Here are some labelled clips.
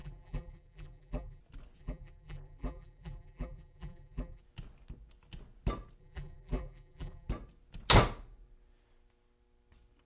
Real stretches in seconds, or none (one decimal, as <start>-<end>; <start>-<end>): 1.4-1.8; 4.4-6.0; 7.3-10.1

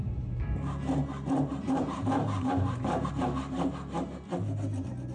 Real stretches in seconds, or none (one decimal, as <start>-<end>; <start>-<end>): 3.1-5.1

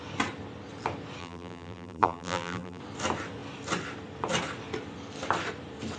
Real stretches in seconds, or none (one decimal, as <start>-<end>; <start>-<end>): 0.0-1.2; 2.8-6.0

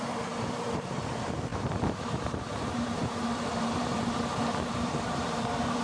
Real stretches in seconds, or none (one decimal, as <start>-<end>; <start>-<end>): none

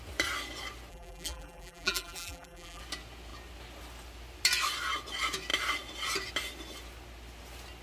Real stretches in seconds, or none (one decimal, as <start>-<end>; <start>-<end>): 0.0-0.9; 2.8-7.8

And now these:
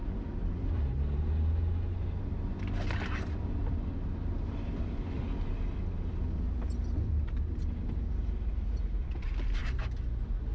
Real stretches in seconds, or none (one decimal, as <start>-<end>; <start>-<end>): 1.2-10.5

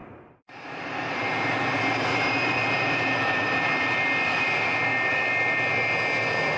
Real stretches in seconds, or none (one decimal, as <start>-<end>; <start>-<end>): 3.7-6.6

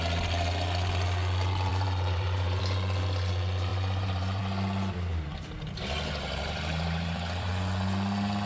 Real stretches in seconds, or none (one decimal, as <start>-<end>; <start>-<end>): 0.0-1.7; 2.6-3.7; 4.4-5.1; 7.5-8.4